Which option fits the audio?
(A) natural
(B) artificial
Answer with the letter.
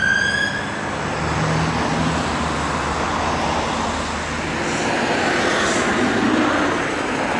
A